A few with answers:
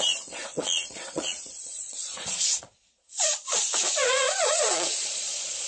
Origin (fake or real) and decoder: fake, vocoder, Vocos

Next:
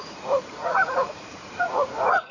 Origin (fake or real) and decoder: fake, vocoder, Vocos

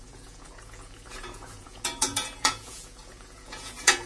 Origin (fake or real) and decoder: fake, vocoder, Vocos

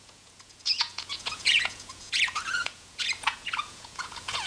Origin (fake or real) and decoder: fake, vocoder, Vocos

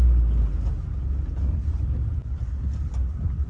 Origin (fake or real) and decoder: real